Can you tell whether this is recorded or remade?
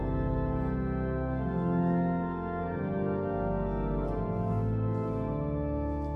recorded